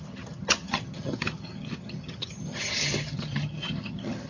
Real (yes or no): no